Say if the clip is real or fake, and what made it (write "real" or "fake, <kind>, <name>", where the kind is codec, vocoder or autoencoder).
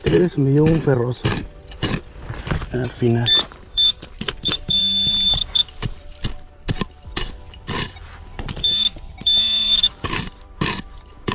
fake, vocoder, BigVGAN v2